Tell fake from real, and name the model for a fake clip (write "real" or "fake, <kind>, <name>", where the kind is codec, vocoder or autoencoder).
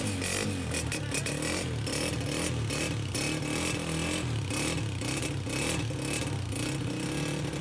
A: real